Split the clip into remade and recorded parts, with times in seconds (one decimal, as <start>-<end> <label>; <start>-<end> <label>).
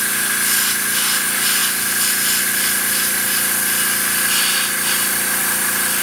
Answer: 0.0-6.0 recorded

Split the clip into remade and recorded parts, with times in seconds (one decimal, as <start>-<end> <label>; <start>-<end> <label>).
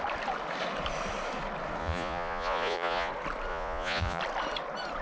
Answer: 0.0-1.8 recorded; 1.8-3.1 remade; 3.1-3.5 recorded; 3.5-4.2 remade; 4.2-5.0 recorded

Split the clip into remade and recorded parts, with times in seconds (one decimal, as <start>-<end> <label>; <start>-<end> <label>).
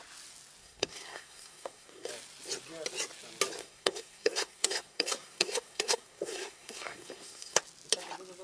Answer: 0.0-0.6 recorded; 0.6-2.1 remade; 2.1-3.6 recorded; 3.6-7.6 remade; 7.6-8.4 recorded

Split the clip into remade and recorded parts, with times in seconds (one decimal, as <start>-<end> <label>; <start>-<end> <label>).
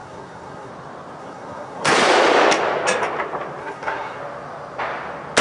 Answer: 0.0-0.7 remade; 0.7-1.2 recorded; 1.2-1.9 remade; 1.9-3.6 recorded; 3.6-4.2 remade; 4.2-5.4 recorded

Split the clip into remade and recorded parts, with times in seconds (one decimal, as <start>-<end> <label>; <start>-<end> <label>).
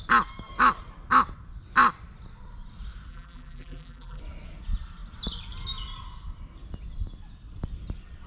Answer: 0.0-3.1 recorded; 3.1-4.2 remade; 4.2-8.3 recorded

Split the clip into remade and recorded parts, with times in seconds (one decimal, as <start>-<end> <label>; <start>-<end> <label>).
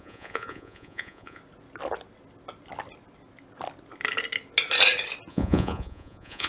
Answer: 0.0-1.4 remade; 1.4-5.3 recorded; 5.3-6.5 remade